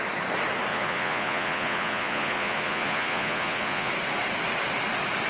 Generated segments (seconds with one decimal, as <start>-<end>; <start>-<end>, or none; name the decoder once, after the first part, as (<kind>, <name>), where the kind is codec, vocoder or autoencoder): 0.7-3.9 (vocoder, Vocos)